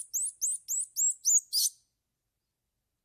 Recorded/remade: recorded